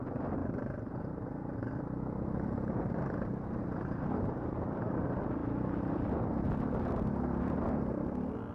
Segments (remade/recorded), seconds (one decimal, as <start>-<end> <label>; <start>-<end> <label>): 0.0-0.4 recorded; 0.4-4.7 remade; 4.7-8.5 recorded